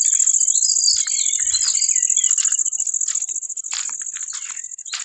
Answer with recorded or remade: recorded